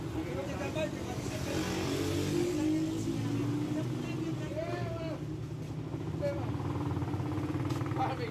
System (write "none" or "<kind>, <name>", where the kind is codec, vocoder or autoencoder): none